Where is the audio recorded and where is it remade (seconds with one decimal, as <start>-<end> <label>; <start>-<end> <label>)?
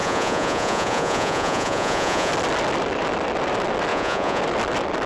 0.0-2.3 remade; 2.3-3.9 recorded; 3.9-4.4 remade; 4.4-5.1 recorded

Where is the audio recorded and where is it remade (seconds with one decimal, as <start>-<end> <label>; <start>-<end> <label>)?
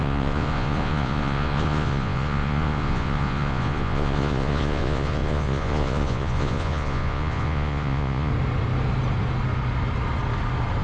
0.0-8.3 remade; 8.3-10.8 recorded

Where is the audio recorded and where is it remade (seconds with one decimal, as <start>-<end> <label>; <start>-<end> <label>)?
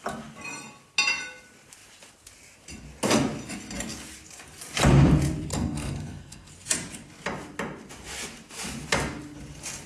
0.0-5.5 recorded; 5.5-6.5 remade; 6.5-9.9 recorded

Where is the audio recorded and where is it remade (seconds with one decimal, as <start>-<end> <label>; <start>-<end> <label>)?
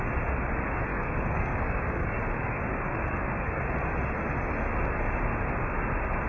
0.0-0.9 recorded; 0.9-3.6 remade; 3.6-6.3 recorded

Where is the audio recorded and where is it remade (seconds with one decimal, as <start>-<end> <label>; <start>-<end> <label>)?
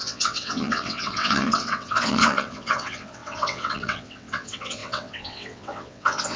0.0-6.4 remade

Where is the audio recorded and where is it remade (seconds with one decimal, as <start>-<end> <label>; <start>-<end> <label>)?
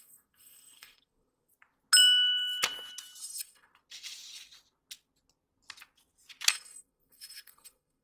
0.0-1.5 remade; 1.5-3.2 recorded; 3.2-3.7 remade; 3.7-6.5 recorded; 6.5-8.0 remade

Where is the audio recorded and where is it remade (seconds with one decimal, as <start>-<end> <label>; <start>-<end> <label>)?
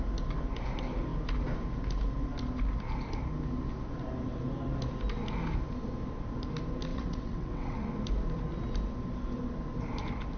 0.0-6.9 recorded; 6.9-7.9 remade; 7.9-10.4 recorded